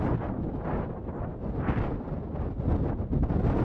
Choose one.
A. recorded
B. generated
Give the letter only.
A